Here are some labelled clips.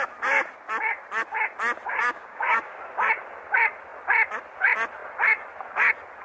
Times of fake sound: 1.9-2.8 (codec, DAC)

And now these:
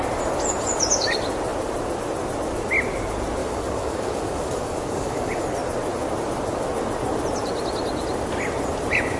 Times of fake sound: 3.4-5.4 (codec, DAC)